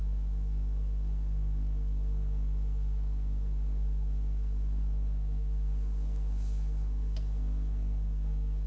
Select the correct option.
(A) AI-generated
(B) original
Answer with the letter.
A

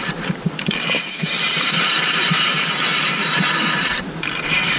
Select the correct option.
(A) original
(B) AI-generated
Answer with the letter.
B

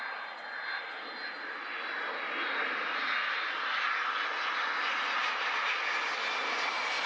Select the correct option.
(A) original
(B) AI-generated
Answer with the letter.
A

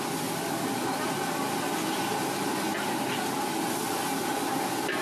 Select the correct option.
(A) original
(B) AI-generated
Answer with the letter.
A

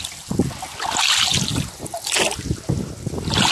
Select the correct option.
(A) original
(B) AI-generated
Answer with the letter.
A